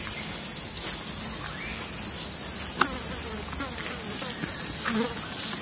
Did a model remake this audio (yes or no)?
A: no